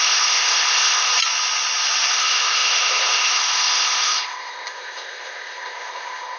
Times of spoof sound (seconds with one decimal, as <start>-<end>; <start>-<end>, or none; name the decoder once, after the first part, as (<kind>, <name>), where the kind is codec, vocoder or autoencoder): 0.0-1.1 (codec, ZipCodec); 2.1-6.4